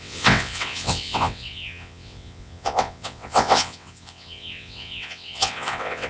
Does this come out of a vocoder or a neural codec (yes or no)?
yes